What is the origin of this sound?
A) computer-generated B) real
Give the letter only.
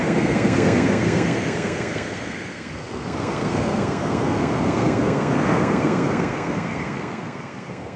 A